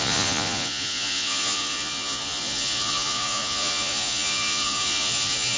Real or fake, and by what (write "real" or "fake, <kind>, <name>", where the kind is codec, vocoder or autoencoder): fake, vocoder, Vocos